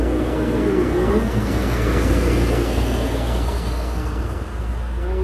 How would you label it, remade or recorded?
remade